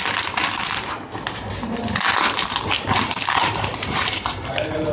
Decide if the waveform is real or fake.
real